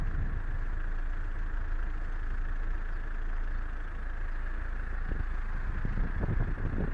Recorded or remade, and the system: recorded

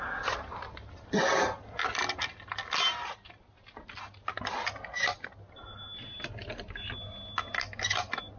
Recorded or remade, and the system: recorded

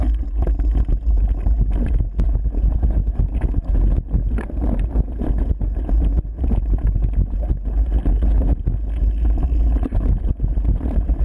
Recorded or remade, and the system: recorded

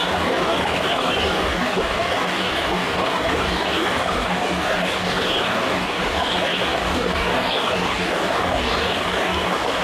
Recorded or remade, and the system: remade, codec, DAC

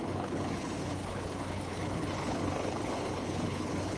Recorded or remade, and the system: remade, codec, HILCodec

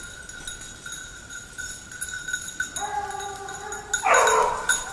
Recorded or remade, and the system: recorded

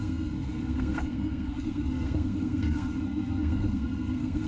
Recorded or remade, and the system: remade, codec, SNAC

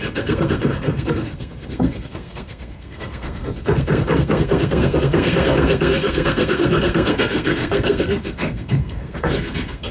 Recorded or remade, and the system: remade, codec, SNAC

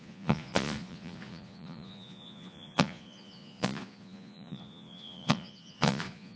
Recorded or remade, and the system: remade, vocoder, Vocos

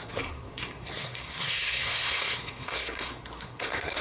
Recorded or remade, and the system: remade, codec, SNAC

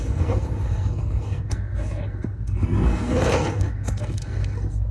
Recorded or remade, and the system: remade, codec, SNAC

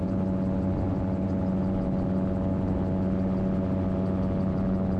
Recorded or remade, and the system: recorded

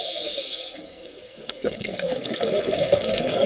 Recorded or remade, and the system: remade, codec, SNAC